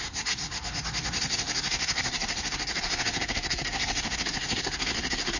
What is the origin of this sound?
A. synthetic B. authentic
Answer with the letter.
A